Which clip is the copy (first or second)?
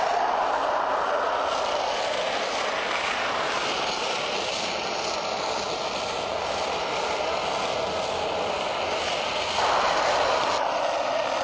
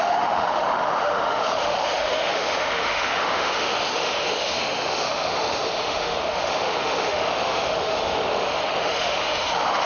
second